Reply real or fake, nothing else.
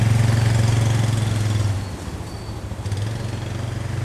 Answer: real